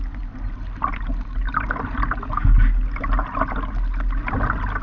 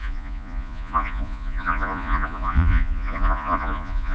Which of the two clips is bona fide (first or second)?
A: first